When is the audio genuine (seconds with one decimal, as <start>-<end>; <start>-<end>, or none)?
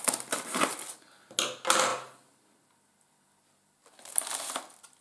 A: 0.0-5.0